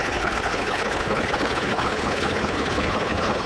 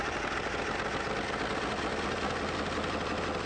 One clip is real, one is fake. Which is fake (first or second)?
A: first